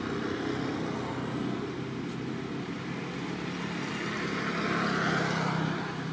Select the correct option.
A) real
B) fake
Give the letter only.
A